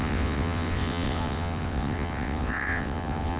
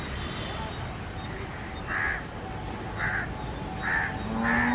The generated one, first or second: first